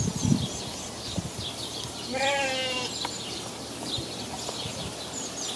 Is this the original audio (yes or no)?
yes